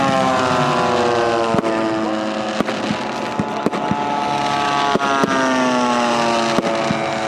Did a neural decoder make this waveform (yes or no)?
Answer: no